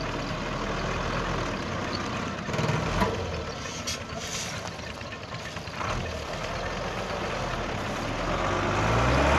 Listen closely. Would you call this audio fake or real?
real